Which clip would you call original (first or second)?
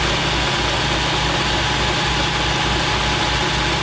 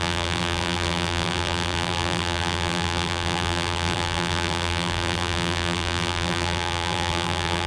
first